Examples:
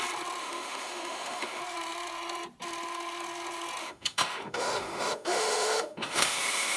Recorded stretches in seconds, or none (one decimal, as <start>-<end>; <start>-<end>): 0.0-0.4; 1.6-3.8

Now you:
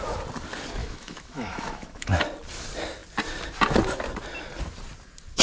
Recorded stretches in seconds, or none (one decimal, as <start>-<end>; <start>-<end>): 0.0-0.8; 2.2-5.4

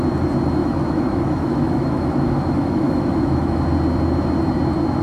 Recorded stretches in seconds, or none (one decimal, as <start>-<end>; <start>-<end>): 0.0-0.6; 3.6-5.0